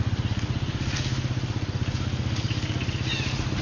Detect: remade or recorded recorded